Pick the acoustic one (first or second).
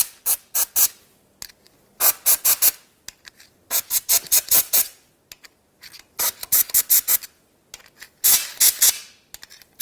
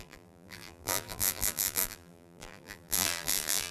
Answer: first